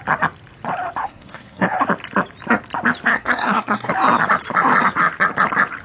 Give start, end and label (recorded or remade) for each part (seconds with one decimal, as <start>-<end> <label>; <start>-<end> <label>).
0.0-1.0 recorded; 1.0-1.8 remade; 1.8-3.1 recorded; 3.1-3.9 remade; 3.9-5.8 recorded